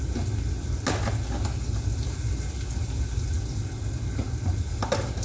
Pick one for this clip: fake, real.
real